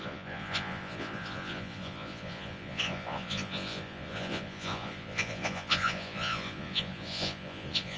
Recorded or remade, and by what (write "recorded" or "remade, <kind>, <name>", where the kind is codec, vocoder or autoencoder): remade, vocoder, Vocos